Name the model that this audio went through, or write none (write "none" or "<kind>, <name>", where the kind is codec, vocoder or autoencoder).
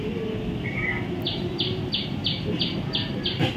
none